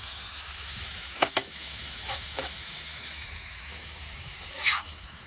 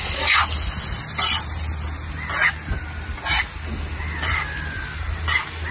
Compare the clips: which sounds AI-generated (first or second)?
first